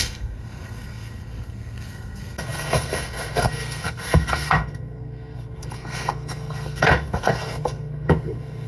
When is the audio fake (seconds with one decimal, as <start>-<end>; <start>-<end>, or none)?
0.0-8.7